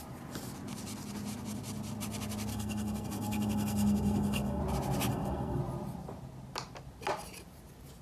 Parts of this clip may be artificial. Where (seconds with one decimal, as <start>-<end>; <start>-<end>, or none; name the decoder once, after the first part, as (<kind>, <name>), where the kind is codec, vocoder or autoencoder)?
2.5-4.6 (codec, SNAC); 5.1-5.6